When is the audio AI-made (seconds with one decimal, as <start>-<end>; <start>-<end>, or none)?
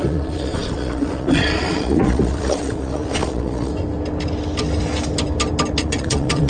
0.0-3.7; 5.8-6.5